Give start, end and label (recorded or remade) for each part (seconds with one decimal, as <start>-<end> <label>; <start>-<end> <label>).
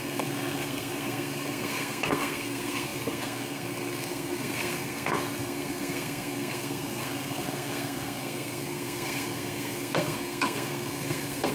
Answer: 0.0-11.5 remade